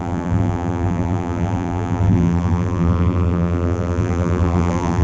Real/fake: fake